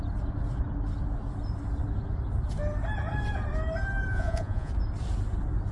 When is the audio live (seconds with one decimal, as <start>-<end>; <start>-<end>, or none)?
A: 0.0-4.1; 4.7-5.7